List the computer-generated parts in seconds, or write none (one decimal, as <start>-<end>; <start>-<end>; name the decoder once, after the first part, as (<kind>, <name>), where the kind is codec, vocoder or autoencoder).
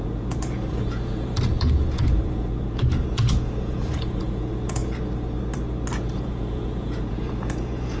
0.0-4.8 (vocoder, Vocos); 6.0-8.0